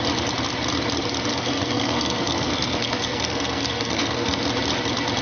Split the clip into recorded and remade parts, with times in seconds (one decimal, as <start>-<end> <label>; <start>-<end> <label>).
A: 0.0-1.3 recorded; 1.3-4.4 remade; 4.4-5.2 recorded

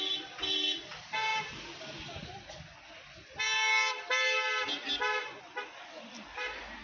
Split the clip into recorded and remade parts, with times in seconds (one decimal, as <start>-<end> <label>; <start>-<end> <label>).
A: 0.0-6.8 recorded

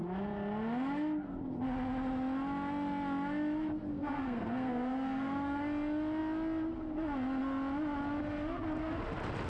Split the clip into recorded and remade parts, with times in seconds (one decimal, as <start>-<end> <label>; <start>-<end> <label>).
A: 0.0-3.9 recorded; 3.9-5.6 remade; 5.6-9.5 recorded

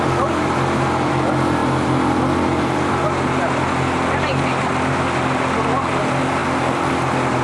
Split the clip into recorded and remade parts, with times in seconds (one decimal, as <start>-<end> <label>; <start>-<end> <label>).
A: 0.0-7.4 recorded

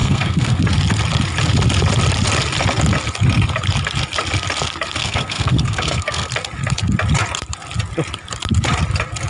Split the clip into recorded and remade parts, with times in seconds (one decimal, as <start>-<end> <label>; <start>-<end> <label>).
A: 0.0-0.6 remade; 0.6-5.0 recorded; 5.0-6.3 remade; 6.3-9.3 recorded

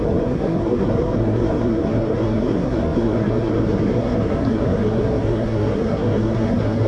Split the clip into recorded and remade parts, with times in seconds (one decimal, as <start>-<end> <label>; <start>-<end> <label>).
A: 0.0-6.9 remade

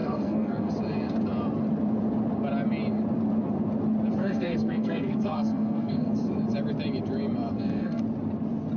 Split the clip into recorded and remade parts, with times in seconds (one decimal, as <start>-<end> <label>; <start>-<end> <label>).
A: 0.0-0.7 remade; 0.7-4.2 recorded; 4.2-6.1 remade; 6.1-7.5 recorded; 7.5-8.0 remade; 8.0-8.8 recorded